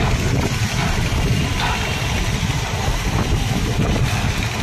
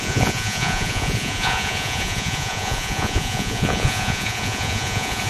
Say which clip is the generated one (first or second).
second